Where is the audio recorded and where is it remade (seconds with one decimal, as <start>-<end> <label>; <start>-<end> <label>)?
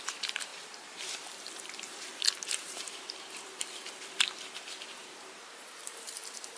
0.0-2.1 remade; 2.1-2.6 recorded; 2.6-6.6 remade